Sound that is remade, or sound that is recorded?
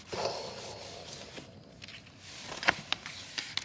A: recorded